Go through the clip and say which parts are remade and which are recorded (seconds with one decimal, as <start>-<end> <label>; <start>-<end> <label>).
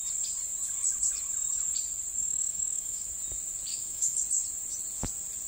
0.0-2.2 recorded; 2.2-3.1 remade; 3.1-3.7 recorded; 3.7-4.2 remade; 4.2-5.5 recorded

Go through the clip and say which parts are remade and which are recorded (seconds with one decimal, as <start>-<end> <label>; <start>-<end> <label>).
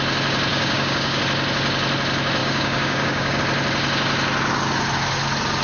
0.0-0.5 recorded; 0.5-1.2 remade; 1.2-2.4 recorded; 2.4-3.4 remade; 3.4-5.6 recorded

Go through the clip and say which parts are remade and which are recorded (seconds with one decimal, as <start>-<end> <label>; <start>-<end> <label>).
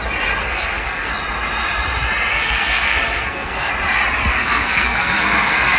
0.0-0.4 recorded; 0.4-1.1 remade; 1.1-2.3 recorded; 2.3-3.7 remade; 3.7-4.3 recorded; 4.3-5.8 remade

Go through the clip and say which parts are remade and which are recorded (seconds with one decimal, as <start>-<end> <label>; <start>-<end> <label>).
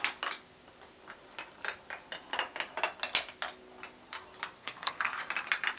0.0-4.6 recorded; 4.6-5.2 remade; 5.2-5.8 recorded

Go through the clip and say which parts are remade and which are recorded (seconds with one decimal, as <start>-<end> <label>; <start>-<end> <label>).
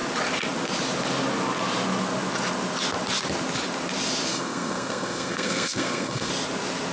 0.0-4.3 recorded; 4.3-6.3 remade; 6.3-6.9 recorded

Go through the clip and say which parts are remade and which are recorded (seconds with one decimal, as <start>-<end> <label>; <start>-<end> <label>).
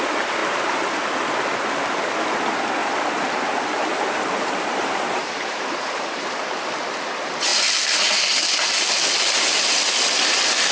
0.0-2.8 recorded; 2.8-6.0 remade; 6.0-10.7 recorded